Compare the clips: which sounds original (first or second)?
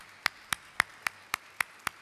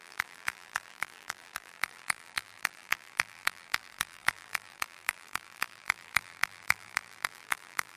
first